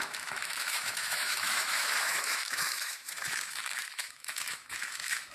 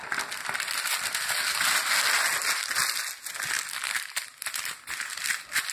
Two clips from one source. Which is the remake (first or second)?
first